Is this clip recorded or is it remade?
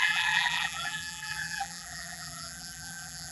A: remade